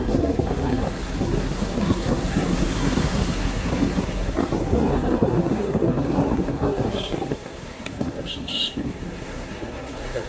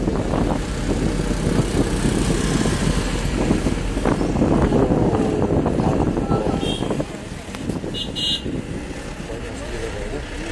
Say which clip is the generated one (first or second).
first